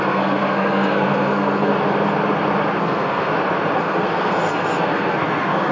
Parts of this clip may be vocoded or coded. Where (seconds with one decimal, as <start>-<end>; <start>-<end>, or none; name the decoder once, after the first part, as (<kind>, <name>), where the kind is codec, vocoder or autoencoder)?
0.0-1.7 (codec, SNAC); 2.8-3.3; 3.8-5.7